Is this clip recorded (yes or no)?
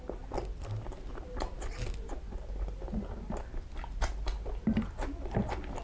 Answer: yes